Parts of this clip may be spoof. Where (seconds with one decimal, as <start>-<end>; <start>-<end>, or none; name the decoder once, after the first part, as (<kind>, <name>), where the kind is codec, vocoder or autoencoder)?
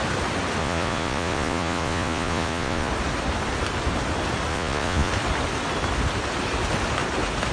0.6-2.9 (vocoder, Vocos); 4.5-5.1